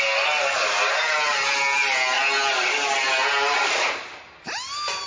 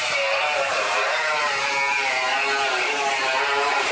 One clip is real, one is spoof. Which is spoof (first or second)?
second